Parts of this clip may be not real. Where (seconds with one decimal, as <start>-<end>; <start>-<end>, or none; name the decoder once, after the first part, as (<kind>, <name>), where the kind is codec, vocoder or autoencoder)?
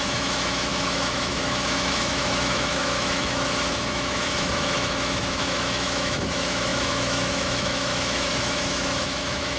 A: 0.0-9.6 (autoencoder, DAC-VAE)